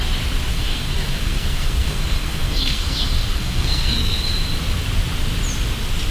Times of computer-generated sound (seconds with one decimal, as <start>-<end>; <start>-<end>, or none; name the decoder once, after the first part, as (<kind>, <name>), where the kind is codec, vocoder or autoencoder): 0.5-4.2 (codec, SNAC)